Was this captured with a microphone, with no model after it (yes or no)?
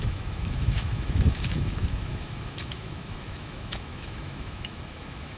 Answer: no